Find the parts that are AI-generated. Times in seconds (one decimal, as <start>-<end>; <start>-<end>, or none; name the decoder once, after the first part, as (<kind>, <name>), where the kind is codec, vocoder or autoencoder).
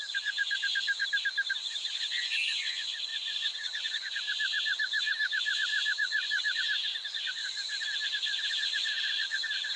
0.0-1.0 (vocoder, Vocos); 1.5-7.4; 8.1-9.8